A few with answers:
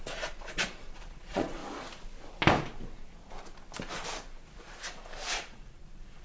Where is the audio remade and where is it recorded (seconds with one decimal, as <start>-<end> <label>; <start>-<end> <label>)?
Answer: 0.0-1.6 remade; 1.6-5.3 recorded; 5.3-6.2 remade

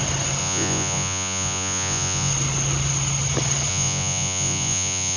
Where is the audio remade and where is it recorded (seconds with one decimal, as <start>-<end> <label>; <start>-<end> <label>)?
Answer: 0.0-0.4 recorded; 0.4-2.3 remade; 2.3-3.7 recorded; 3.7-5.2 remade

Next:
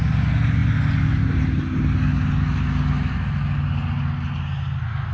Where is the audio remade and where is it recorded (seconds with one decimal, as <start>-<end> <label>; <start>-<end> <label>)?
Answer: 0.0-5.1 recorded